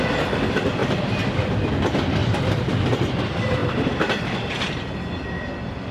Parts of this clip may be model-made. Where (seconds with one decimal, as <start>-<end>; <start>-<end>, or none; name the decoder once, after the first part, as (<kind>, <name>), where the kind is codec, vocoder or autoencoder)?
2.2-2.9 (vocoder, BigVGAN v2); 3.6-4.5